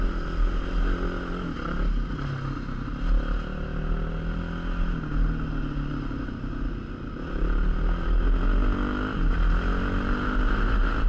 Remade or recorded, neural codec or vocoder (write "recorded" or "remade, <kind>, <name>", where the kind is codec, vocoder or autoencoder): recorded